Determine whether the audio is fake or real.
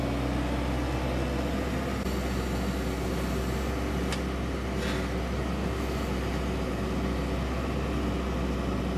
real